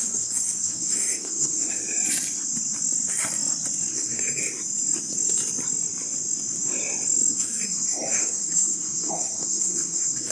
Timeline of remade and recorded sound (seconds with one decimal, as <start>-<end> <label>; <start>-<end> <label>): 0.0-1.8 remade; 1.8-3.9 recorded; 3.9-4.4 remade; 4.4-7.3 recorded; 7.3-10.3 remade